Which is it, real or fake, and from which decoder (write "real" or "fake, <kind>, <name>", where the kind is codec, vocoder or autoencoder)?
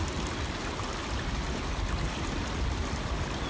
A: real